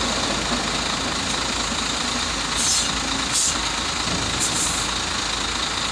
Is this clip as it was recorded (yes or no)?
yes